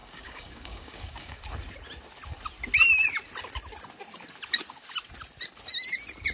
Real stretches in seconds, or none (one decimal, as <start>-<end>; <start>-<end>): 1.4-6.3